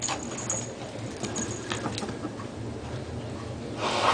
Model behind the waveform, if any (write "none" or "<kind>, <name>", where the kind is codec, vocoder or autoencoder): none